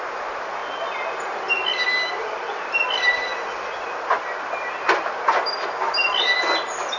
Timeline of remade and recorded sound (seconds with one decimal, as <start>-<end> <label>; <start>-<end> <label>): 0.0-7.0 recorded